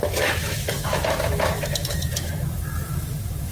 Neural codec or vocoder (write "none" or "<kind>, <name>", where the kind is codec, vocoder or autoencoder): autoencoder, DAC-VAE